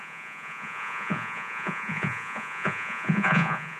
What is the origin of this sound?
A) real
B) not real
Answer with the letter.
B